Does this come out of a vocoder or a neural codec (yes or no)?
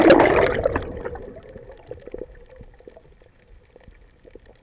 no